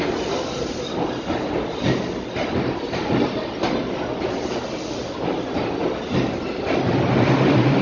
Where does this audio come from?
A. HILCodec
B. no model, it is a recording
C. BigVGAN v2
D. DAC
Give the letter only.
B